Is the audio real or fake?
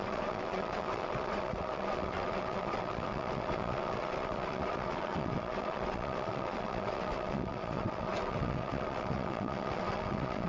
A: fake